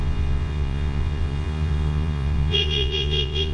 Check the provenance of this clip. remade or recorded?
remade